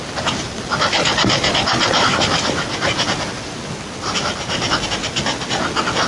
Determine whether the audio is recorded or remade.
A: recorded